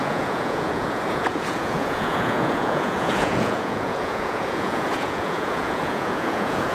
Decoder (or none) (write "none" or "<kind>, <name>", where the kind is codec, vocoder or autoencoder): vocoder, Vocos